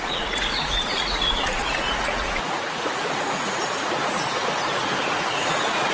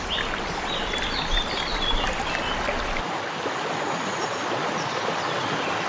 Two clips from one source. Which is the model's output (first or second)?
first